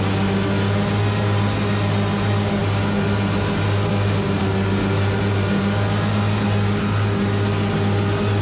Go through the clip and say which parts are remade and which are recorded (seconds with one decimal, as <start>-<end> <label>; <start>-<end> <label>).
0.0-8.4 recorded